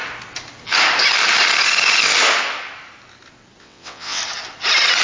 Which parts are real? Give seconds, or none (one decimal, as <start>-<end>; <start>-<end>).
0.0-3.6; 4.2-5.0